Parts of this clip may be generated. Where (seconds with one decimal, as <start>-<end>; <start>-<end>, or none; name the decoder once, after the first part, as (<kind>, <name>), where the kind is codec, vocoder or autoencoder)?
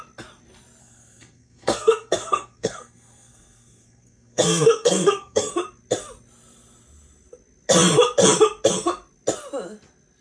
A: 0.8-5.5 (codec, SNAC)